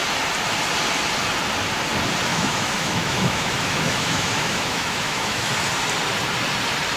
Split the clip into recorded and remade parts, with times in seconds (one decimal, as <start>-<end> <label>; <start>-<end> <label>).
0.0-2.3 recorded; 2.3-5.5 remade; 5.5-7.0 recorded